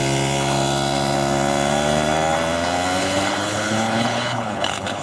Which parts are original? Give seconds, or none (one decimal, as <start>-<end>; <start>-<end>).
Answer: 0.0-3.0